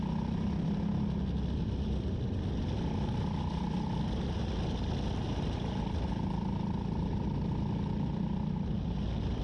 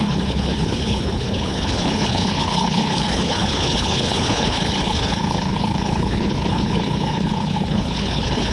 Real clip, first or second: first